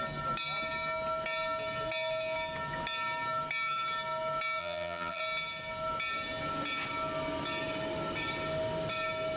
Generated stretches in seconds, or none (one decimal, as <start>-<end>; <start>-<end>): 4.6-5.2